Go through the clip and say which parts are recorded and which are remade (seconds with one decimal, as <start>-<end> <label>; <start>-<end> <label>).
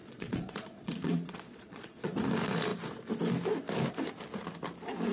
0.0-2.2 remade; 2.2-5.1 recorded